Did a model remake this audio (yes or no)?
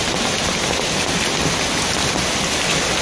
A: no